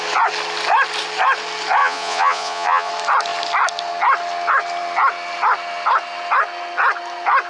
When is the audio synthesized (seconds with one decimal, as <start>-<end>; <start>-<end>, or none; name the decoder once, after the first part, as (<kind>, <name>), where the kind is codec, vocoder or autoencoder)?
1.8-2.9 (vocoder, Vocos)